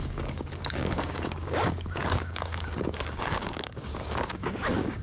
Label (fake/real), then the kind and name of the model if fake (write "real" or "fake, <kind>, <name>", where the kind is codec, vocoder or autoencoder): fake, codec, DAC